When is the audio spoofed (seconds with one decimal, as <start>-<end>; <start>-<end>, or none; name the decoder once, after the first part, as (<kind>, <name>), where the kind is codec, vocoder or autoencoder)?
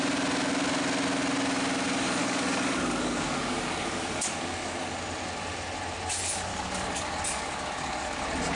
2.2-4.9 (codec, DAC); 6.5-8.2